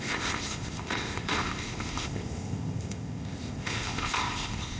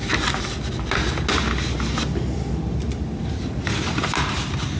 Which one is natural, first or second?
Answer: second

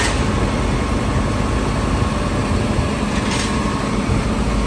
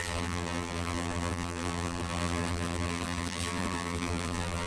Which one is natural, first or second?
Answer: first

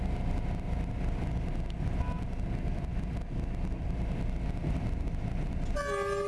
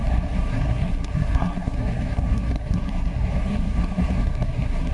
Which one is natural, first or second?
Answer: first